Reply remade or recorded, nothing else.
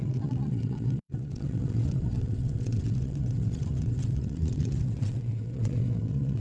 remade